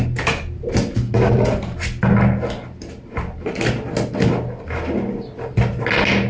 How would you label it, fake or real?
real